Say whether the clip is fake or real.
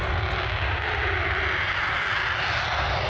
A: real